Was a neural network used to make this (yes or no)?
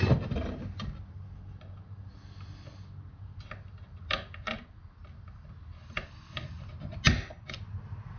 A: no